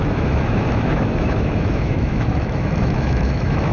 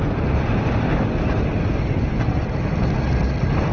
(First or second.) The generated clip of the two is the first